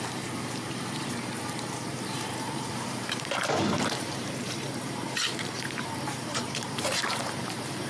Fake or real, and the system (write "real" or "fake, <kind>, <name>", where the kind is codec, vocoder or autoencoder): fake, vocoder, BigVGAN v2